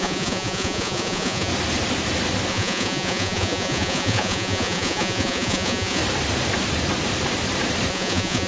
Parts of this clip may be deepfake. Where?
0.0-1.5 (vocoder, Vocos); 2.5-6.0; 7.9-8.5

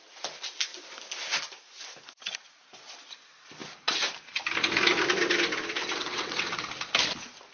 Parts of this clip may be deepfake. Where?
5.8-6.6 (vocoder, WaveNeXt)